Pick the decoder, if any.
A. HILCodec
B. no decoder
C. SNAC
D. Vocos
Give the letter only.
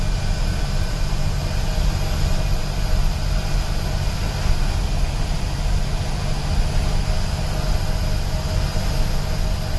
B